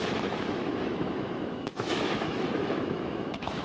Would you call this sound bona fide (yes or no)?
no